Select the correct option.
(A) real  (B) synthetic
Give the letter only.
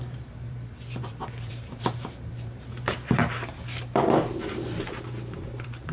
B